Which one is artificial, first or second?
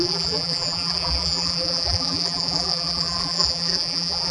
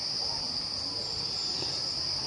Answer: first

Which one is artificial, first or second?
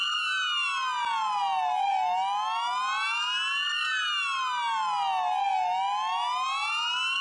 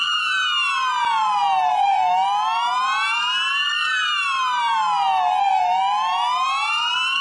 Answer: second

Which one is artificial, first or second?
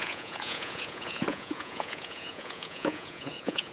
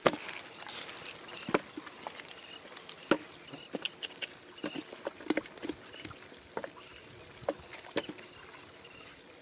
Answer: first